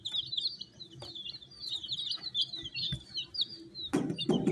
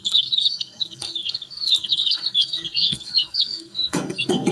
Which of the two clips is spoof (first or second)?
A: second